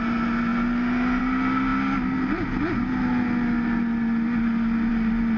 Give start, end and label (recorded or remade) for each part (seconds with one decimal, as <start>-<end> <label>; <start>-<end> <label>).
0.0-5.4 recorded

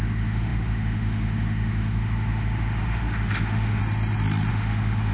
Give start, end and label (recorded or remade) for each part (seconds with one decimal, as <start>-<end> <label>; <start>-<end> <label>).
0.0-3.8 remade; 3.8-4.5 recorded; 4.5-5.1 remade

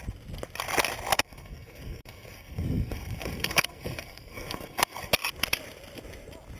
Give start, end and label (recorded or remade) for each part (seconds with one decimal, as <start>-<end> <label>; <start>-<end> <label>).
0.0-1.1 recorded; 1.1-5.1 remade; 5.1-6.6 recorded

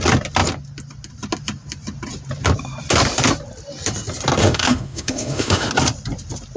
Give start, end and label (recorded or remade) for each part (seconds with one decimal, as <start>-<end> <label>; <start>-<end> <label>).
0.0-4.4 recorded; 4.4-5.7 remade; 5.7-6.6 recorded

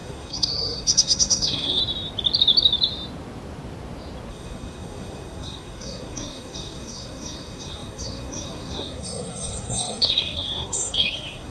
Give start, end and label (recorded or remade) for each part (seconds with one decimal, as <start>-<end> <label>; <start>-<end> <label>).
0.0-1.8 remade; 1.8-4.3 recorded; 4.3-11.5 remade